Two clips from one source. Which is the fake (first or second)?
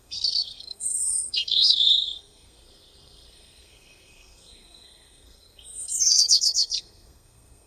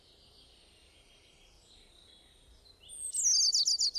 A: first